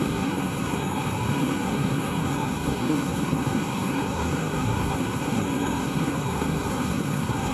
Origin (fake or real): fake